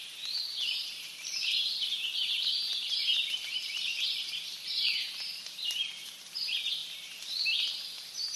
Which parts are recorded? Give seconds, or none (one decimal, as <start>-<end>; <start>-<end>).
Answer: none